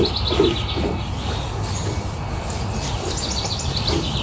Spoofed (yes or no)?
no